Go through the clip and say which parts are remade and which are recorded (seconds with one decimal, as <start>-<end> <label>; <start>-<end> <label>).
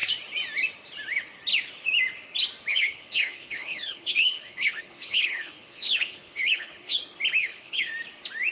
0.0-2.7 recorded; 2.7-7.0 remade; 7.0-7.4 recorded; 7.4-7.9 remade; 7.9-8.5 recorded